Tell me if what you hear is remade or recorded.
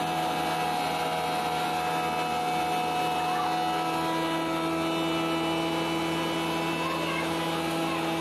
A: recorded